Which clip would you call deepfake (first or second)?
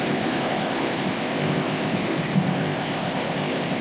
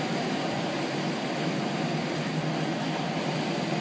first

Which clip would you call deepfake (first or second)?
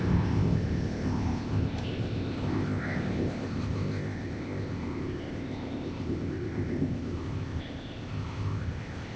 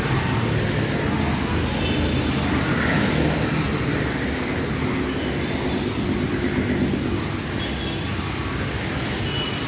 first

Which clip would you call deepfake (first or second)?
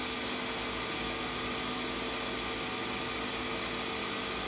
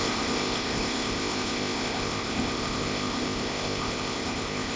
second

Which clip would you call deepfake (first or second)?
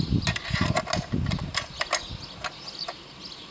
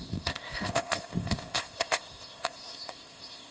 second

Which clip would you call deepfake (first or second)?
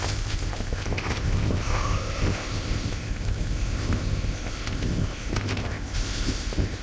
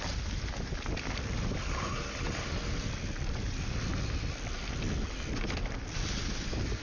first